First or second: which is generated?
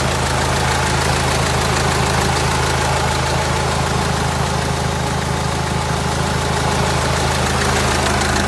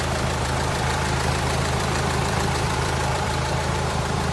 second